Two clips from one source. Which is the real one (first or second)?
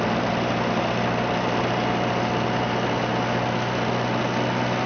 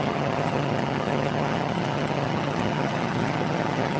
first